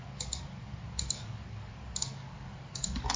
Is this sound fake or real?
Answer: fake